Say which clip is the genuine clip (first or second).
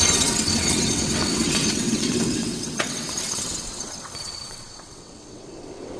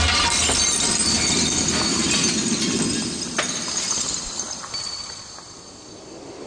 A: second